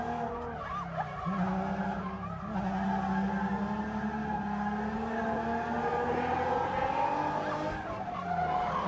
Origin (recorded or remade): recorded